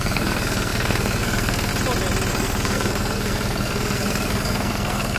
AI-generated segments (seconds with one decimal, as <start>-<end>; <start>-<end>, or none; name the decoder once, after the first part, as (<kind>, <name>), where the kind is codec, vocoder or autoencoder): 0.0-1.7 (codec, SNAC); 2.3-5.2